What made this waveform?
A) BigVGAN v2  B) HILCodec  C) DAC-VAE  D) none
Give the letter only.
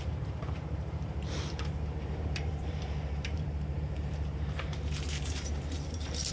A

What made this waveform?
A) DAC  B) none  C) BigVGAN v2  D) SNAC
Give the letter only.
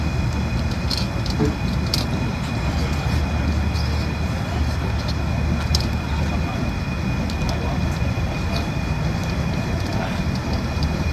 B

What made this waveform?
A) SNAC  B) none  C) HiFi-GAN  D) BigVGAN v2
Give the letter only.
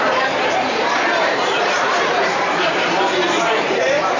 D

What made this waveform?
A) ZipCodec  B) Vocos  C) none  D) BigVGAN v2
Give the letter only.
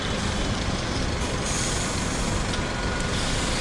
C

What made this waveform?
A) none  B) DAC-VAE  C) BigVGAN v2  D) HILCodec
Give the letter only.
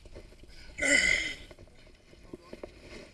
A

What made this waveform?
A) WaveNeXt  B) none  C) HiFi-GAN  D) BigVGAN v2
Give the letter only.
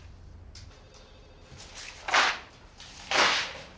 B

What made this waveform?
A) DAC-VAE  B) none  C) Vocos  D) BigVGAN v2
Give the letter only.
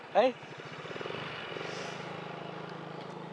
D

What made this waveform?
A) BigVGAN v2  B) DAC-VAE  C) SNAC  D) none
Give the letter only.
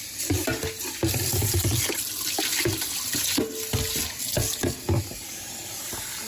D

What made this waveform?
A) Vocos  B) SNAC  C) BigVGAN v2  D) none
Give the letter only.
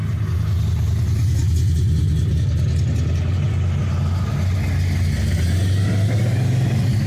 D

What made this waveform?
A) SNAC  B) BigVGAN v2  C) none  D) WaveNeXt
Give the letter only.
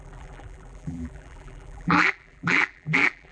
B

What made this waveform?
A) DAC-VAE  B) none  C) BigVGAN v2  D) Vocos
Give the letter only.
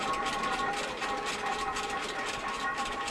C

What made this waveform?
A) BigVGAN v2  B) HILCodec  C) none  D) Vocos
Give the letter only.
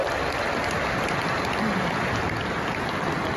A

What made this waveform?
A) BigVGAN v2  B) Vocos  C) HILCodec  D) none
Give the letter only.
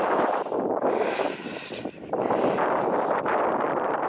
A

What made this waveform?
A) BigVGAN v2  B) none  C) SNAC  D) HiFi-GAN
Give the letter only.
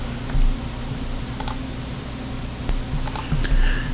B